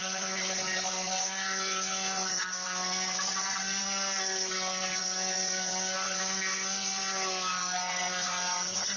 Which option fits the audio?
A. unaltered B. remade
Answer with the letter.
B